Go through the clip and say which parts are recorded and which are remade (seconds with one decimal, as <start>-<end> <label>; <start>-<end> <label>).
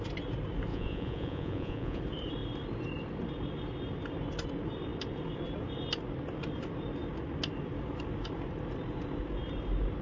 0.0-0.7 recorded; 0.7-2.0 remade; 2.0-10.0 recorded